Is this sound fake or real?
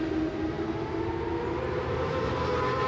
real